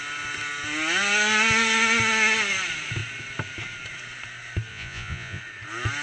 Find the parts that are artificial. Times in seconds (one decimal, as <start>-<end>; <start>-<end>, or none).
4.7-5.4